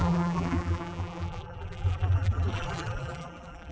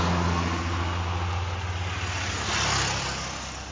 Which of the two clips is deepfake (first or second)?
first